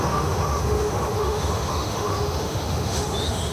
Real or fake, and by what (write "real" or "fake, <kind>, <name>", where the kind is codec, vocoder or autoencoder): fake, autoencoder, DAC-VAE